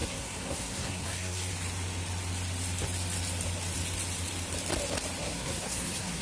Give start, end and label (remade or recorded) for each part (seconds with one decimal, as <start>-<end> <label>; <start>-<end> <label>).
0.0-1.5 remade; 1.5-5.2 recorded; 5.2-6.2 remade

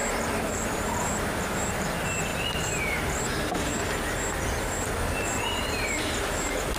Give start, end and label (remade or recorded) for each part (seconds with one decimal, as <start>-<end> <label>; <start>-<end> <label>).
0.0-1.9 remade; 1.9-2.3 recorded; 2.3-3.2 remade; 3.2-6.8 recorded

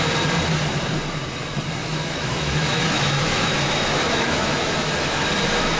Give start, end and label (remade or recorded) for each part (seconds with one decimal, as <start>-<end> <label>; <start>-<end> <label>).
0.0-1.8 recorded; 1.8-5.3 remade; 5.3-5.8 recorded

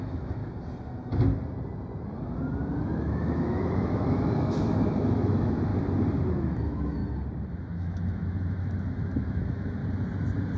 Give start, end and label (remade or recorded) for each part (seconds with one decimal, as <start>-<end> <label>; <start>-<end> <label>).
0.0-0.4 remade; 0.4-2.8 recorded; 2.8-5.7 remade; 5.7-6.4 recorded; 6.4-7.0 remade; 7.0-7.5 recorded; 7.5-9.8 remade; 9.8-10.6 recorded

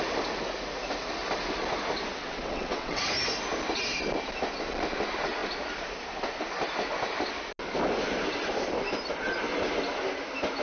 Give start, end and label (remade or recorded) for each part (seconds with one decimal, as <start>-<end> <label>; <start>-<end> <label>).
0.0-2.2 recorded; 2.2-3.0 remade; 3.0-10.6 recorded

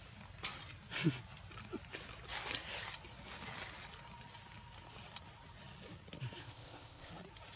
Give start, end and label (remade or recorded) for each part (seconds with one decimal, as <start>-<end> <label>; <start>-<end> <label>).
0.0-6.4 recorded; 6.4-7.1 remade; 7.1-7.6 recorded

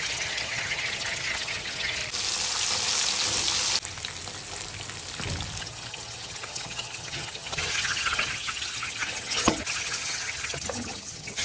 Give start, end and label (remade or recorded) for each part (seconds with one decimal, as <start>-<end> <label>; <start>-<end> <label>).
0.0-2.0 remade; 2.0-5.6 recorded; 5.6-11.4 remade